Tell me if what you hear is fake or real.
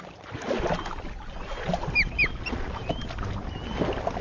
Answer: real